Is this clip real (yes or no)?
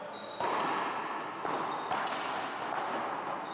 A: yes